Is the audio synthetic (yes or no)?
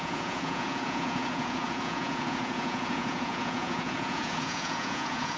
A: yes